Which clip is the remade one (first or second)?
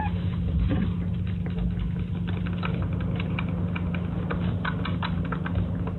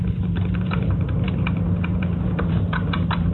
second